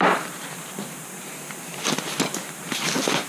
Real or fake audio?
fake